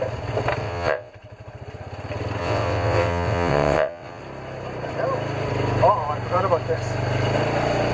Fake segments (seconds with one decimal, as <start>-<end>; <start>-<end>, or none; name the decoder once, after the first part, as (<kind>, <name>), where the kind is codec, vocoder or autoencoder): 0.6-1.1 (vocoder, WaveNeXt); 2.4-4.2